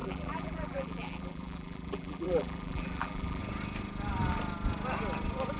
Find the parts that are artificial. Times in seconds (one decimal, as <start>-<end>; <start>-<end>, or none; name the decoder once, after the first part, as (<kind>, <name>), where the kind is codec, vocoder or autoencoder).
0.0-3.4 (vocoder, BigVGAN v2)